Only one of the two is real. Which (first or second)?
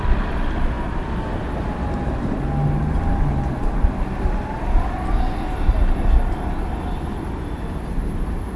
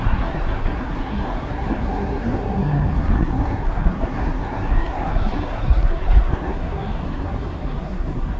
first